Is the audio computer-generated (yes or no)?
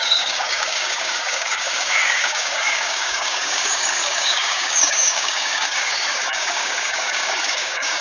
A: yes